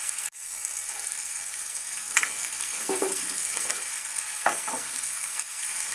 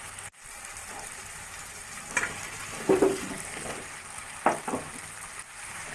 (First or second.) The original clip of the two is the second